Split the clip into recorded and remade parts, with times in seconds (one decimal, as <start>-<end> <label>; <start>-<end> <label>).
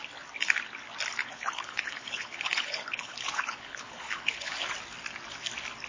0.0-1.2 recorded; 1.2-4.7 remade; 4.7-5.9 recorded